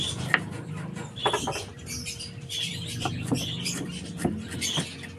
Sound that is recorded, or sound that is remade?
remade